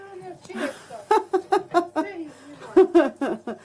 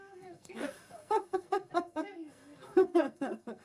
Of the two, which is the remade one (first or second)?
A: second